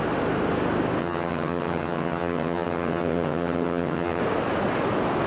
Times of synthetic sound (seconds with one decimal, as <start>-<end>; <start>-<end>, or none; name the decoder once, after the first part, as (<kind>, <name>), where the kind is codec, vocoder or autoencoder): 1.0-4.2 (vocoder, HiFi-GAN)